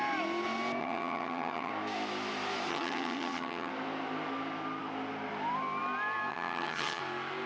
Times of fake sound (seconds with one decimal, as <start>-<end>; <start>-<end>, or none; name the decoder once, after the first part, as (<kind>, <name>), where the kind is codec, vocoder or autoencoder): 0.8-1.7 (vocoder, HiFi-GAN); 2.7-3.7; 6.3-7.0